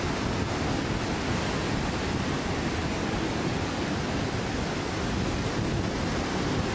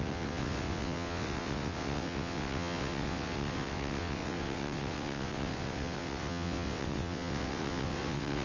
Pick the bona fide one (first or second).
first